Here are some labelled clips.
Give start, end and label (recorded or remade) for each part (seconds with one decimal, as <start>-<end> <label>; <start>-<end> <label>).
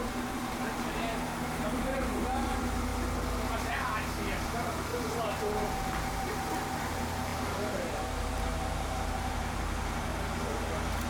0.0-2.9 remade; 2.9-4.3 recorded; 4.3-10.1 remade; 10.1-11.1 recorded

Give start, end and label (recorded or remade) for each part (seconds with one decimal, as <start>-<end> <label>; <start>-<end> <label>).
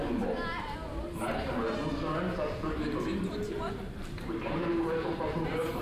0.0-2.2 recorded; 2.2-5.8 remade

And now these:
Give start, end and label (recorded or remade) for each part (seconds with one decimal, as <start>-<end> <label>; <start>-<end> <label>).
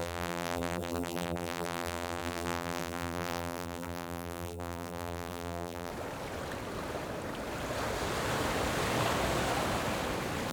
0.0-5.9 remade; 5.9-10.5 recorded